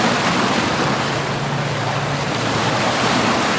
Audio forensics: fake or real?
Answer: real